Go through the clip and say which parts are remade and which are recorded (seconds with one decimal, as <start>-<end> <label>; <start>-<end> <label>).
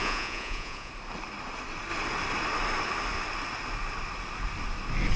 0.0-0.9 remade; 0.9-5.2 recorded